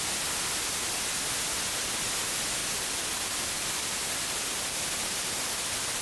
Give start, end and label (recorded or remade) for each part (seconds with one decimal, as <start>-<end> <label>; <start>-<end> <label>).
0.0-2.6 recorded; 2.6-6.0 remade